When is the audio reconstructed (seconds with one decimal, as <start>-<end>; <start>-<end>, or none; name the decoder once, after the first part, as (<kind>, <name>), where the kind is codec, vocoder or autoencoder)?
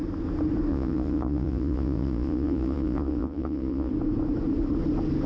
0.7-3.9 (vocoder, Vocos)